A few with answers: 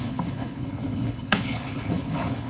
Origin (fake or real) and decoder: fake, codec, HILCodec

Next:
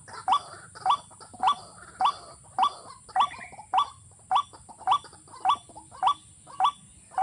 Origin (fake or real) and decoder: real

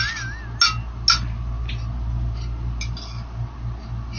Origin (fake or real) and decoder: real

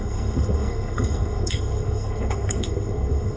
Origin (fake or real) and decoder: fake, codec, SNAC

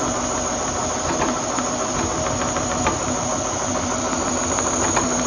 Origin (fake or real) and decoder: real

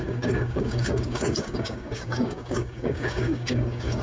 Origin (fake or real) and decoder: fake, codec, DAC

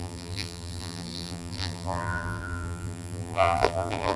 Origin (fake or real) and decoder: fake, vocoder, BigVGAN v2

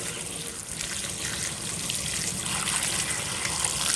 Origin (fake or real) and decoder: real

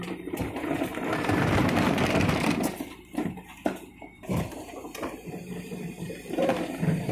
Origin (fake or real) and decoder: fake, vocoder, BigVGAN v2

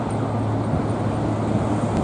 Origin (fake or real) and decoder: real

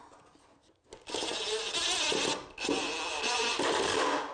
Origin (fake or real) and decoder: real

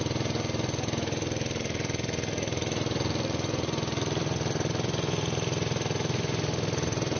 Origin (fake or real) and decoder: real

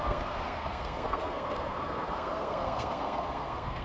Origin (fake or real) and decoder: fake, codec, SNAC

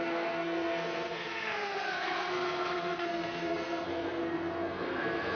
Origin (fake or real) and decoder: fake, codec, SNAC